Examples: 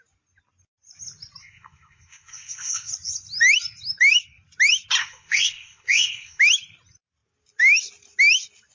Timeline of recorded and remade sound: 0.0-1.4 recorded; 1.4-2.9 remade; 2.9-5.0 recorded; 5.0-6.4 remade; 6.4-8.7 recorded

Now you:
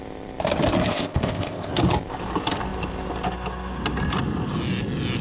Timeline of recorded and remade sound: 0.0-0.9 recorded; 0.9-1.7 remade; 1.7-5.2 recorded

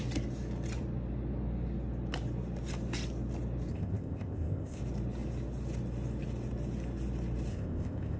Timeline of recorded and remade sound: 0.0-3.7 recorded; 3.7-4.8 remade; 4.8-7.5 recorded; 7.5-8.2 remade

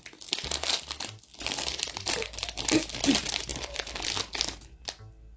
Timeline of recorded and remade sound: 0.0-5.4 recorded

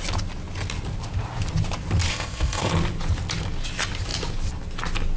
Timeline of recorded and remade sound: 0.0-2.1 recorded; 2.1-2.7 remade; 2.7-5.2 recorded

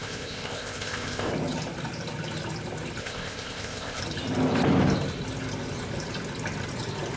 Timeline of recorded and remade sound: 0.0-1.3 remade; 1.3-3.0 recorded; 3.0-4.0 remade; 4.0-7.2 recorded

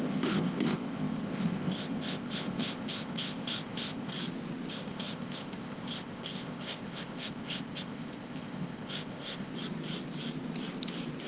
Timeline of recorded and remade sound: 0.0-4.1 remade; 4.1-4.7 recorded; 4.7-9.5 remade; 9.5-11.3 recorded

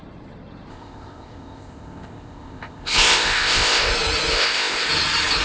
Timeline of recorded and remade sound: 0.0-0.7 recorded; 0.7-3.9 remade; 3.9-4.3 recorded; 4.3-4.9 remade; 4.9-5.4 recorded